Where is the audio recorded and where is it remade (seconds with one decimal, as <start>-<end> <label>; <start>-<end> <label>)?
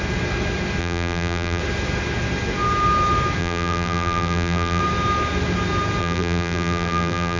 0.0-0.8 recorded; 0.8-1.6 remade; 1.6-3.4 recorded; 3.4-4.8 remade; 4.8-6.0 recorded; 6.0-7.4 remade